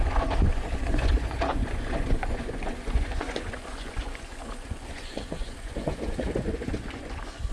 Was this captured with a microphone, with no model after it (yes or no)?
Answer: no